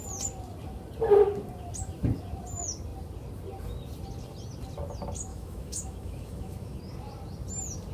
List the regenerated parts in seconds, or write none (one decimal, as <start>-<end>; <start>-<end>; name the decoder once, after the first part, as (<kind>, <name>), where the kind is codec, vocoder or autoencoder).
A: 5.3-6.8 (autoencoder, DAC-VAE)